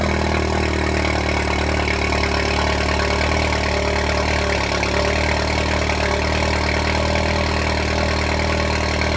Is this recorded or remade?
recorded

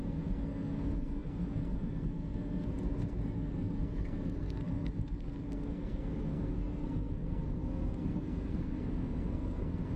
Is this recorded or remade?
remade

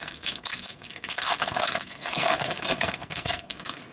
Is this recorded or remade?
remade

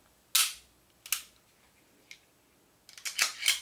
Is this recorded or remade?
recorded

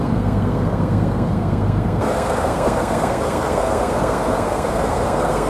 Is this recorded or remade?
remade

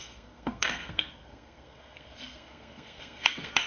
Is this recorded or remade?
remade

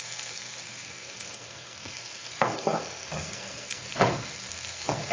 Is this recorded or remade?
remade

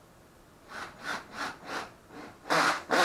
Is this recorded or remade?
recorded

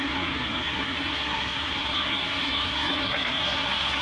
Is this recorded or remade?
remade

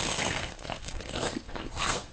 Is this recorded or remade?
remade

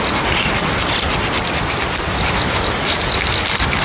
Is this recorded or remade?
recorded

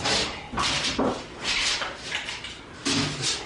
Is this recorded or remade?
recorded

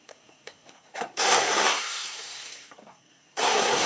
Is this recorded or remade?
remade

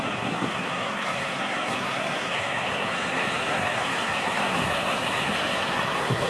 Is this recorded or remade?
remade